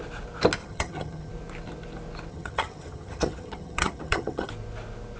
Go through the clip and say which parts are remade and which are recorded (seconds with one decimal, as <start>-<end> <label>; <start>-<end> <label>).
0.0-0.6 recorded; 0.6-1.3 remade; 1.3-2.3 recorded; 2.3-4.5 remade; 4.5-5.2 recorded